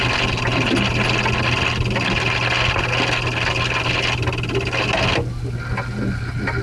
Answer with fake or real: real